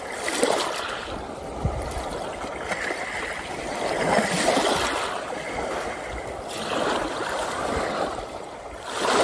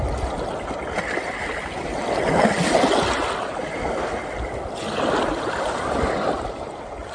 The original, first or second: second